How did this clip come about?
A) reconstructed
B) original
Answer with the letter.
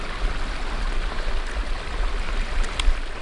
B